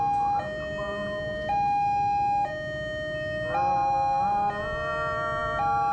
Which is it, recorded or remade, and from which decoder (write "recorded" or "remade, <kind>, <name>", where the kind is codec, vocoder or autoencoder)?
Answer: recorded